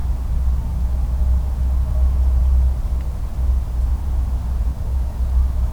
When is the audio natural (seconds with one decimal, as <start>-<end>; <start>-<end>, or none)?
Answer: 0.0-4.7; 5.2-5.7

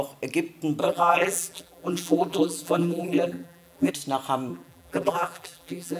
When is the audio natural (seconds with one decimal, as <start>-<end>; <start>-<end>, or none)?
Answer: 0.0-0.8; 3.9-4.5

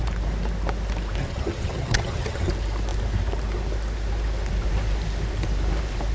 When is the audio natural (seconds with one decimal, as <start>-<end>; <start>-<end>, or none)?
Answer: 0.0-1.2; 2.5-6.1

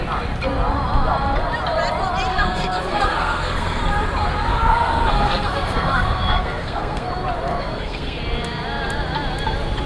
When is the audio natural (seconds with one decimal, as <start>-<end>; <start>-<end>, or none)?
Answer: 0.0-2.3; 3.8-4.5; 7.1-7.5; 8.2-9.9